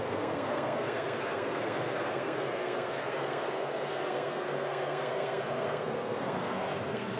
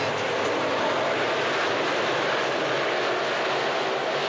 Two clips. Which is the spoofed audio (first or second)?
first